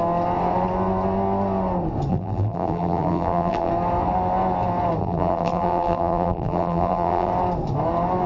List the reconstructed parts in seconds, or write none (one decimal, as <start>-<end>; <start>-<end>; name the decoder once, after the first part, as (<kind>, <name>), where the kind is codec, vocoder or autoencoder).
2.1-3.7 (vocoder, BigVGAN v2); 5.0-7.3